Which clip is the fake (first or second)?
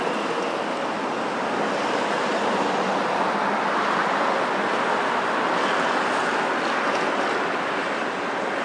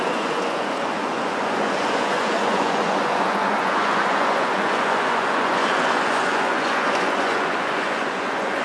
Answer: second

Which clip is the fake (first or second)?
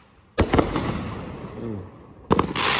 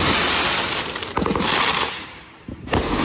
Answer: second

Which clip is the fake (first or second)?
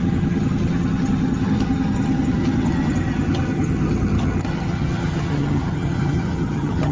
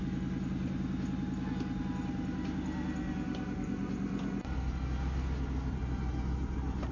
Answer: first